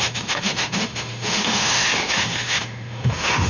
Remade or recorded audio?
remade